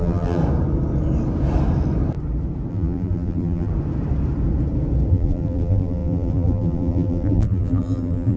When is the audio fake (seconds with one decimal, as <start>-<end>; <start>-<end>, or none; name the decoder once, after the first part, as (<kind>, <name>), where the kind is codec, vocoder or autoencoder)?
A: 0.0-0.4 (vocoder, BigVGAN v2); 2.7-3.7; 5.1-8.4